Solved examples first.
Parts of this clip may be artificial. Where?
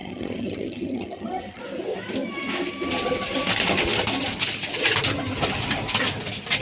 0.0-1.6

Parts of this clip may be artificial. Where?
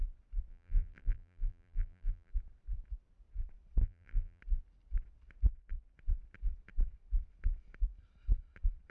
0.5-2.3; 3.8-4.4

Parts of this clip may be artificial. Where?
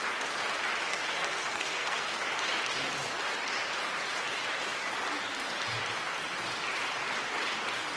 0.9-2.2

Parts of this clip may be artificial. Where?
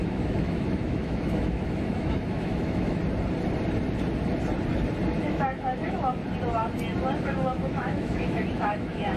0.0-3.0; 5.2-6.2; 7.2-9.2